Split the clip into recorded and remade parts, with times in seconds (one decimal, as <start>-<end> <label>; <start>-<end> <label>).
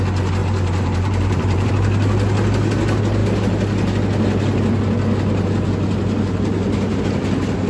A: 0.0-0.4 recorded; 0.4-1.7 remade; 1.7-7.7 recorded